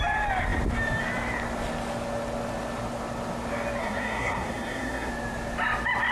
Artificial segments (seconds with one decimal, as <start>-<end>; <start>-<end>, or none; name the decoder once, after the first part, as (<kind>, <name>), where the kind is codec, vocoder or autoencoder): 3.8-5.1 (codec, SNAC)

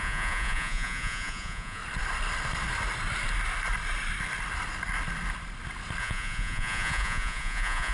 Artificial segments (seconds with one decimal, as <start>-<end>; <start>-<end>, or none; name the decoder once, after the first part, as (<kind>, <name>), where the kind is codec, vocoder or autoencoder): 0.0-1.8 (vocoder, Vocos); 6.0-7.9